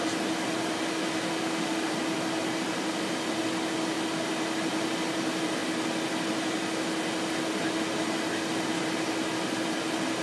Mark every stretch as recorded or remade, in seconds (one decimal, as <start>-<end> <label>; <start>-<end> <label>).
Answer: 0.0-1.3 recorded; 1.3-1.9 remade; 1.9-10.2 recorded